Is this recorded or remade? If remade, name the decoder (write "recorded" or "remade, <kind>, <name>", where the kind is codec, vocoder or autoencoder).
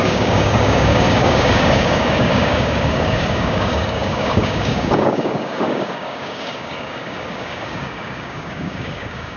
remade, codec, DAC